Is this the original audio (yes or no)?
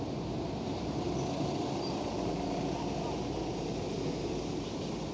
yes